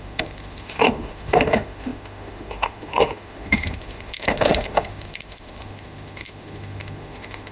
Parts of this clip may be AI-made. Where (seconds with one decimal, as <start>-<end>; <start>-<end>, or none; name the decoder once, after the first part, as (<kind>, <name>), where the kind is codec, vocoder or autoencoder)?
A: 0.0-7.5 (autoencoder, DAC-VAE)

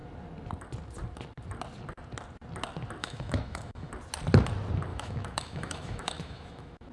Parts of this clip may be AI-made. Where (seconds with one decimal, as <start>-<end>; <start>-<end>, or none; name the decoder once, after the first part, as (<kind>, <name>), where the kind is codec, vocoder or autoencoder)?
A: 3.0-3.9 (autoencoder, DAC-VAE); 4.9-6.9